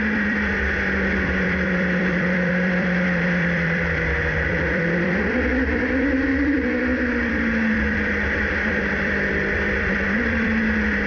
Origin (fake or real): fake